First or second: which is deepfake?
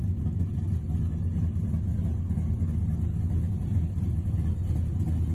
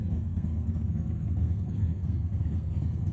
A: second